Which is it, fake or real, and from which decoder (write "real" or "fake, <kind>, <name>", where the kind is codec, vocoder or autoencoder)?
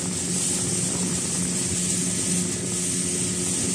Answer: real